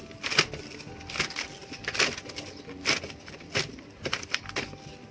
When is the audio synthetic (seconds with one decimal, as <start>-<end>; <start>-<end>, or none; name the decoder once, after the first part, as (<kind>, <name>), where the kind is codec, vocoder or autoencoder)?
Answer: 1.6-4.4 (vocoder, BigVGAN v2)